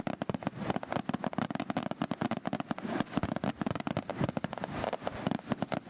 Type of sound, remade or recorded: recorded